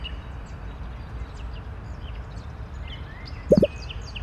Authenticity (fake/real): real